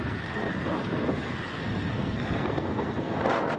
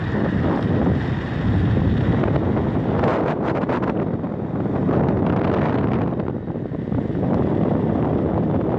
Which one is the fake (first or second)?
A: first